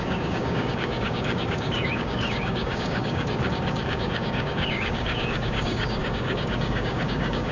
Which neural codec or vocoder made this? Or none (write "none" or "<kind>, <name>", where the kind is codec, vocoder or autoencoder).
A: codec, DAC